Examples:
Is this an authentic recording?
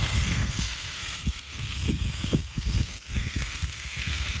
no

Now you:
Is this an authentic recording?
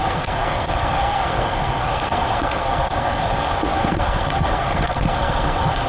no